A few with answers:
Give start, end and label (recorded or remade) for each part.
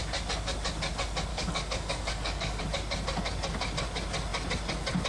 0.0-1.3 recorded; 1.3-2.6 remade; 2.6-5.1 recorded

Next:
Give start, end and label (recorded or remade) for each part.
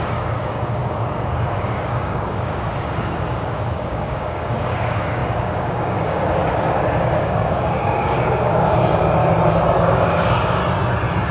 0.0-9.2 remade; 9.2-9.8 recorded; 9.8-10.6 remade; 10.6-11.3 recorded